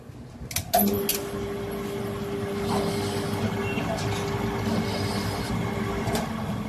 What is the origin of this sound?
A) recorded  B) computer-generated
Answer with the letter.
A